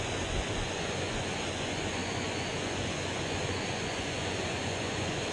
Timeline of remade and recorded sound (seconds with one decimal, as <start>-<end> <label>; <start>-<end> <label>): 0.0-5.3 remade